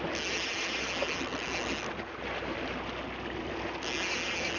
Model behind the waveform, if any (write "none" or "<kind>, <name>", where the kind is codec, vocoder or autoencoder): none